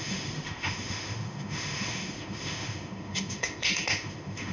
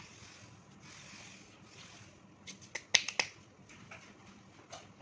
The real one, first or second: second